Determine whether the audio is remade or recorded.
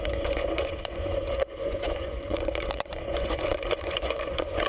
remade